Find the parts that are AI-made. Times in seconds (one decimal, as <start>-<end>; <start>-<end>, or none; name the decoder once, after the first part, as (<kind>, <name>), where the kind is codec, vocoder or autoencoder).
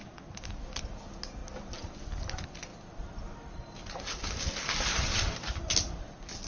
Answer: 0.0-0.8 (vocoder, BigVGAN v2); 4.9-5.8